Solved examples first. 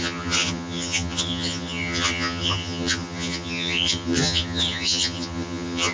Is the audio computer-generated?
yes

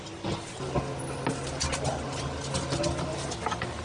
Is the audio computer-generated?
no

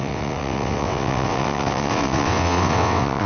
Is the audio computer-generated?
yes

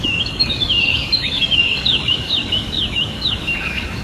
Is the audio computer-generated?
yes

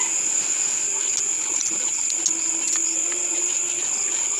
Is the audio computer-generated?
no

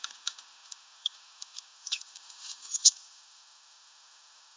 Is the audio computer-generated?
yes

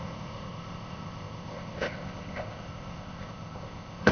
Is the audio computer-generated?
yes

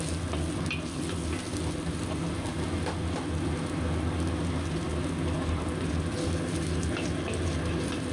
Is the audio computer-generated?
no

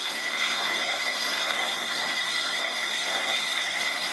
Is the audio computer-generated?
yes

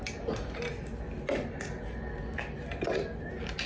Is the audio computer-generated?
no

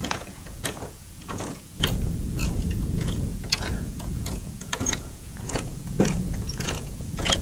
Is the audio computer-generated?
yes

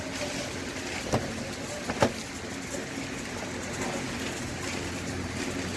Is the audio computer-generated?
no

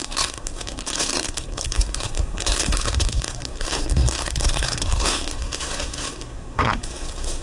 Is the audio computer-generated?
yes